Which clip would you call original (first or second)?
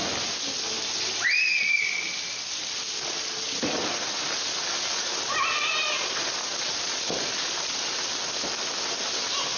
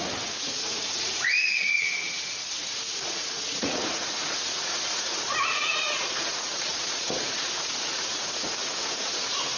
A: first